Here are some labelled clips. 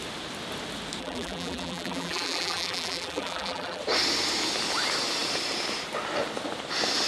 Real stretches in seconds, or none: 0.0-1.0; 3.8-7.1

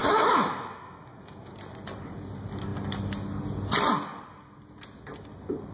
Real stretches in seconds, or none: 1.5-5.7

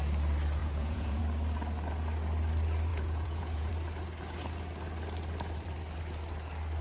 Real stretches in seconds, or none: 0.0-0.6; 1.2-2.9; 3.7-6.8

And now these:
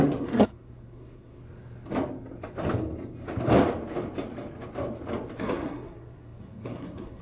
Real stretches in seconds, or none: 1.4-5.4

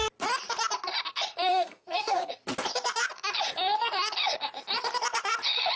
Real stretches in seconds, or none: 0.0-1.5; 2.3-5.8

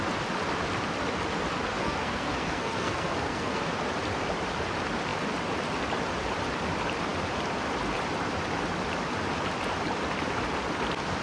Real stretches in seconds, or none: 0.0-1.7; 3.6-11.2

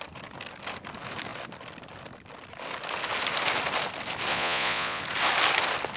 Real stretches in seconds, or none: 0.0-4.3; 5.0-6.0

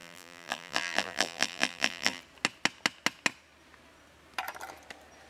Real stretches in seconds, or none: 2.2-5.3